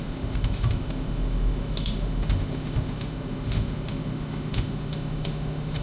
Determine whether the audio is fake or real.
fake